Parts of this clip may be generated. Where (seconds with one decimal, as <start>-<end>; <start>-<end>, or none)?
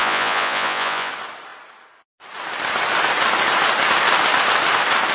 0.0-1.1